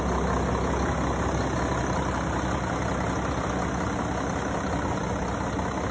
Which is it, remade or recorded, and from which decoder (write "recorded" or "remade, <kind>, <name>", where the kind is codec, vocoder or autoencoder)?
recorded